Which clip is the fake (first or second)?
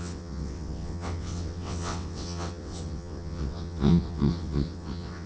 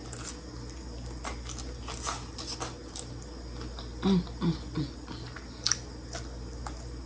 first